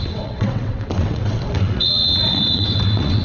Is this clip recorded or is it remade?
remade